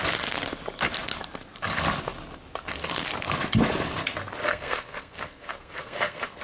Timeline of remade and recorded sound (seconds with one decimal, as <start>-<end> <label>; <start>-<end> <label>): 0.0-4.5 recorded; 4.5-6.4 remade